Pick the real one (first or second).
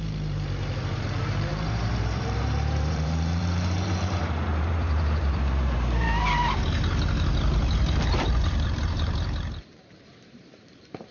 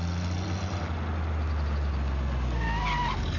second